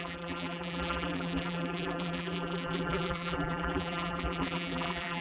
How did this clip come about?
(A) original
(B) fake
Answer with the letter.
B